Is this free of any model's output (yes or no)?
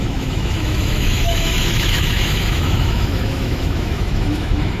no